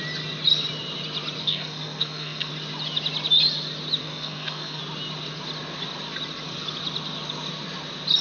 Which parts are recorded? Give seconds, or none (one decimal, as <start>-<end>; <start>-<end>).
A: 0.0-1.4; 2.5-4.0; 4.8-8.2